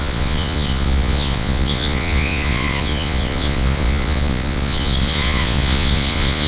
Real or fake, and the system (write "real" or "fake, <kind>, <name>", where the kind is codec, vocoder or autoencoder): fake, vocoder, Vocos